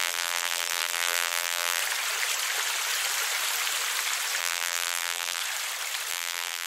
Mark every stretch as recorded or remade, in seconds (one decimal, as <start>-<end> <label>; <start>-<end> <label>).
0.0-1.8 remade; 1.8-4.4 recorded; 4.4-5.4 remade; 5.4-6.1 recorded; 6.1-6.7 remade